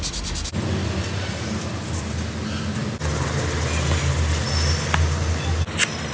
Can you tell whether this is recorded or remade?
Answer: recorded